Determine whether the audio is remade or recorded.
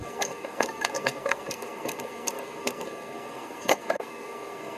remade